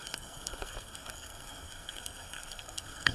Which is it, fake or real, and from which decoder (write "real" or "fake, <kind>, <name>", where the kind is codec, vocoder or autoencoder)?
fake, codec, SNAC